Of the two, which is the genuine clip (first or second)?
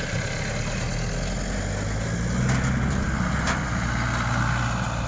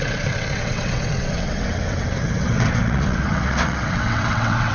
first